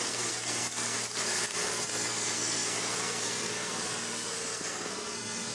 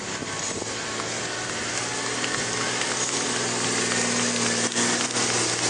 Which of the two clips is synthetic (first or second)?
first